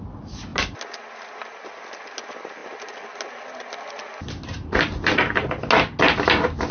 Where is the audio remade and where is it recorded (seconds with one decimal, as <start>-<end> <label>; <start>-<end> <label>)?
0.0-6.7 recorded